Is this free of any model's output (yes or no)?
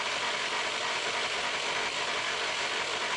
yes